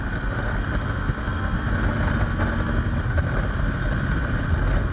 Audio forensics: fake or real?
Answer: real